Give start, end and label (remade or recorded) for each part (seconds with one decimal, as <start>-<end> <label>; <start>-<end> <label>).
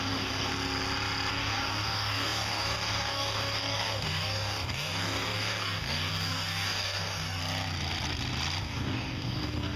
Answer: 0.0-0.5 remade; 0.5-1.3 recorded; 1.3-7.4 remade; 7.4-8.6 recorded; 8.6-9.8 remade